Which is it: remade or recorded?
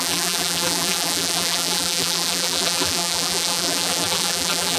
remade